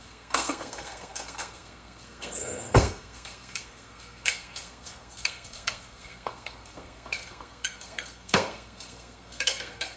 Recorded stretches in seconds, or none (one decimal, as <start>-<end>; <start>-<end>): none